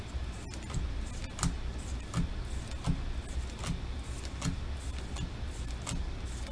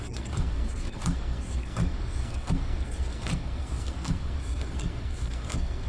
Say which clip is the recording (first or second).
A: first